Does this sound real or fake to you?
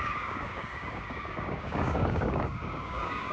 fake